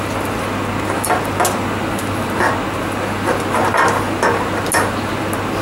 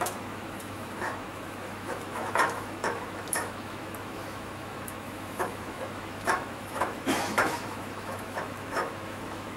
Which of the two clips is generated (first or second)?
second